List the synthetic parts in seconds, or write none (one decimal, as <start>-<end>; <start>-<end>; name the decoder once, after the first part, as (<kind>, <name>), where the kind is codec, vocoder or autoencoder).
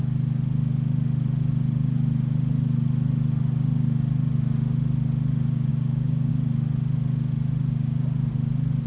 5.7-6.3 (codec, DAC)